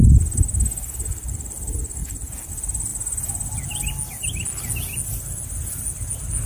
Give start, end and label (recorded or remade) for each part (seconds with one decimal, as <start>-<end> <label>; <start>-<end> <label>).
0.0-2.0 recorded; 2.0-2.5 remade; 2.5-6.5 recorded